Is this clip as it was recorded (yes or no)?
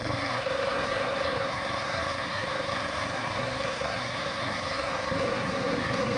no